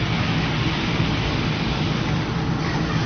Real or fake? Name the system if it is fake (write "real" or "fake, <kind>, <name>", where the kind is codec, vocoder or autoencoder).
fake, vocoder, BigVGAN v2